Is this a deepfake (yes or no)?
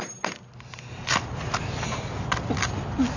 no